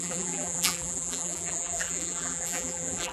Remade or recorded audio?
remade